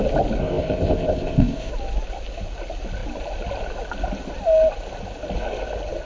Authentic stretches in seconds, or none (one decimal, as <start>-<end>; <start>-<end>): 0.0-0.4; 1.7-6.0